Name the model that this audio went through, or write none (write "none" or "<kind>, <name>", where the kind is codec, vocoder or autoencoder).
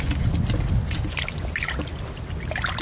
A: none